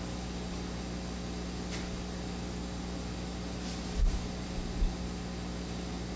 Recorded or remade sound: recorded